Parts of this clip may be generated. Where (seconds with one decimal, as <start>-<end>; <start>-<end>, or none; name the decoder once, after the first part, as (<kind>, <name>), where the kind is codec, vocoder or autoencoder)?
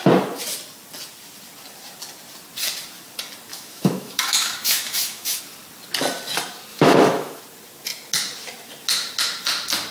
3.5-5.4 (autoencoder, DAC-VAE); 6.7-7.4